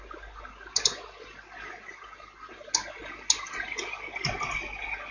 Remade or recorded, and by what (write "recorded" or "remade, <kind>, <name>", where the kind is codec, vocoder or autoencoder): recorded